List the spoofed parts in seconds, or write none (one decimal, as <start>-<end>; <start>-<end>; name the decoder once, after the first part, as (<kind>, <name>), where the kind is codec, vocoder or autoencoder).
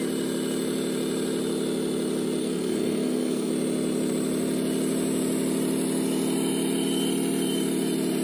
2.4-3.5 (codec, SNAC)